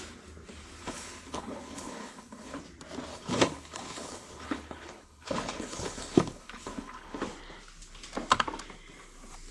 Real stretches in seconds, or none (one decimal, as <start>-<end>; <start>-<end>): 0.0-0.8; 2.6-3.1; 7.2-9.5